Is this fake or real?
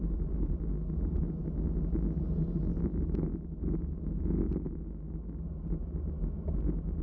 real